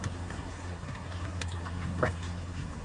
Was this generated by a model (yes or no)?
yes